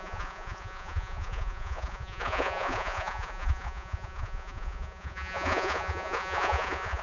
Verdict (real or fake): fake